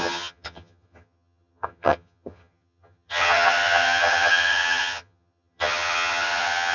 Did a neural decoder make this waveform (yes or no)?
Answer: yes